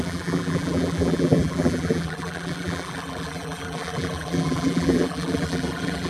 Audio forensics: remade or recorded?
remade